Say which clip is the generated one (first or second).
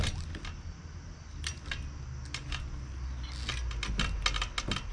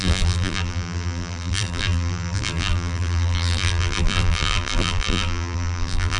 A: second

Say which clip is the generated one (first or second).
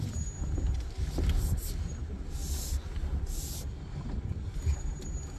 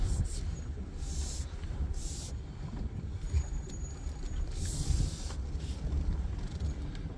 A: second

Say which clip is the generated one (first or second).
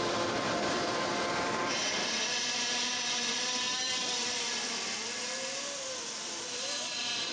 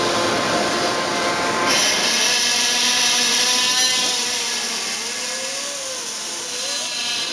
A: first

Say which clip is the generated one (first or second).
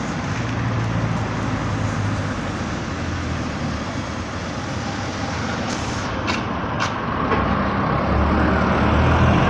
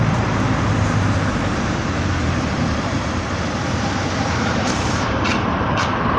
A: second